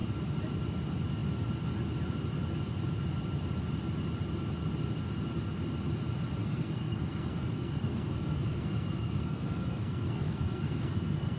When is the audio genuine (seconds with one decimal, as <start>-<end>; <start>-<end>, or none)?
0.0-6.4